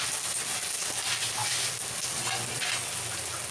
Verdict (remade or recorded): recorded